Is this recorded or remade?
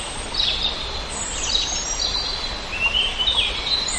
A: recorded